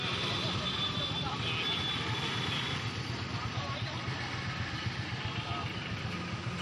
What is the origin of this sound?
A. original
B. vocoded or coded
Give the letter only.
A